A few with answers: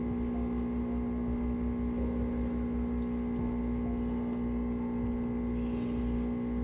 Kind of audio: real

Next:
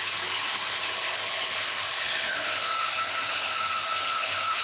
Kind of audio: fake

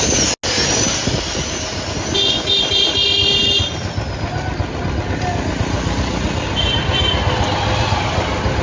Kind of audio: real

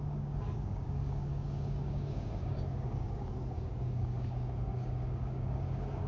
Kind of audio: fake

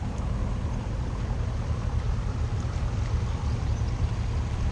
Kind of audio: fake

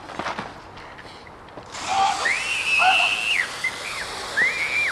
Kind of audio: real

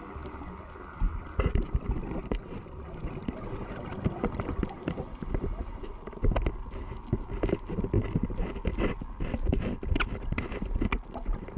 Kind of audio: real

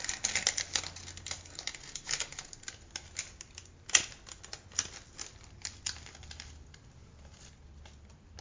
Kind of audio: real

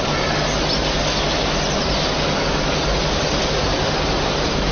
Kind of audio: real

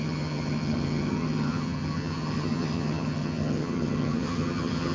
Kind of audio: fake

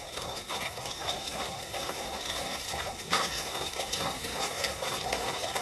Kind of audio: fake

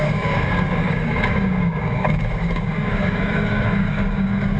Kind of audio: fake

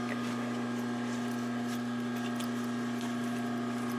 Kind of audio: real